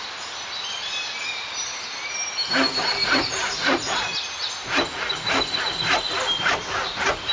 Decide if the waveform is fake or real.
real